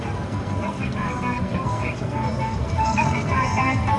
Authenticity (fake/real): fake